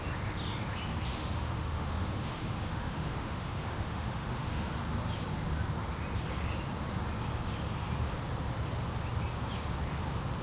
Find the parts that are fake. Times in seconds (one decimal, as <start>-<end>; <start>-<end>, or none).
1.1-4.7